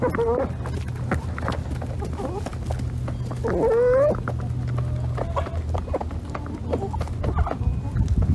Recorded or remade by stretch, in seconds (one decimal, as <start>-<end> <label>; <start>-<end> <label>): 0.0-8.3 recorded